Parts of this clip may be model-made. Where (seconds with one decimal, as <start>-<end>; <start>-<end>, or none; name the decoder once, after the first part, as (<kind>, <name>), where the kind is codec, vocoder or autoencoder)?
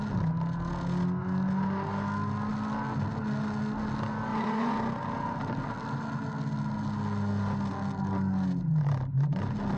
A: 4.3-4.8 (vocoder, Vocos)